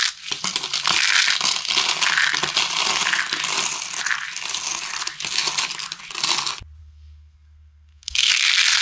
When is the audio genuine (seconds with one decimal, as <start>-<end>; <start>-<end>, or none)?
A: 0.0-6.8; 8.3-8.8